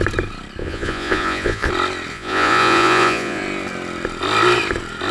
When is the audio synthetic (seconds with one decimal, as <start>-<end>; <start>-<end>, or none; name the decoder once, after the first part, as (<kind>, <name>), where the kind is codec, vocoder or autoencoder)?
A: 0.6-1.7 (vocoder, Vocos); 2.1-3.4